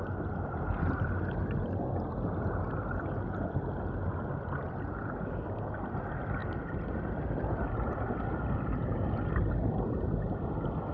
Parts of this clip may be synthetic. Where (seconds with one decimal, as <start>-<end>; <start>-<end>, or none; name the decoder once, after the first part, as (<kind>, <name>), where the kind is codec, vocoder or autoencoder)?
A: 6.4-8.2 (vocoder, BigVGAN v2)